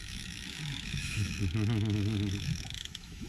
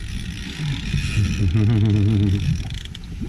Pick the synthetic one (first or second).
first